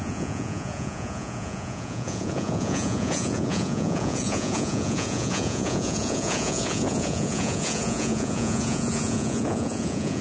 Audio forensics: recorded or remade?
remade